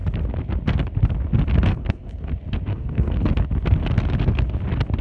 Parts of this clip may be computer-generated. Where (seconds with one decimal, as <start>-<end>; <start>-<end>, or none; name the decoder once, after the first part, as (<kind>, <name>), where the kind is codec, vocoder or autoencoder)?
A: 1.7-2.3 (codec, SNAC); 2.7-3.3